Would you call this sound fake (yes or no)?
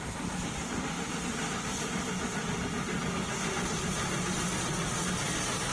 no